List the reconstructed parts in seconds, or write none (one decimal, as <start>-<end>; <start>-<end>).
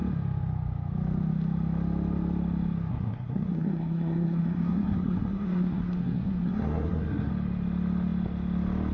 2.9-7.3